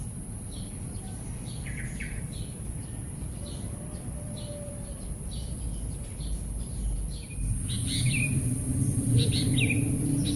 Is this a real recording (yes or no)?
no